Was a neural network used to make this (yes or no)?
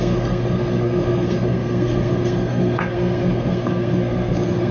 yes